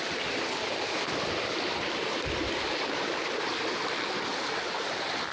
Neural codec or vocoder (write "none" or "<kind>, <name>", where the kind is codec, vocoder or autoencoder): none